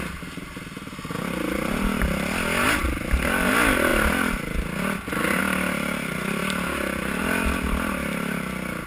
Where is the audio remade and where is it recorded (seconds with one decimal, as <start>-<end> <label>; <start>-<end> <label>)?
0.0-8.9 recorded